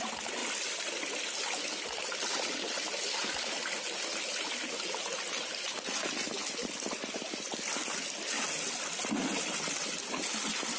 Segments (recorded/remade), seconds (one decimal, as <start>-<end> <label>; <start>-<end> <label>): 0.0-10.8 recorded